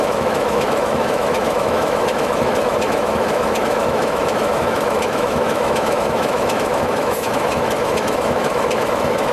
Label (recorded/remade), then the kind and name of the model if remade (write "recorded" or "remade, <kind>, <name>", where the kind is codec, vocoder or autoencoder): remade, autoencoder, DAC-VAE